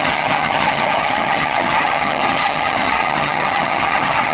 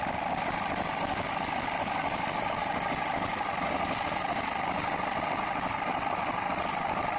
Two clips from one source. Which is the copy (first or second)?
first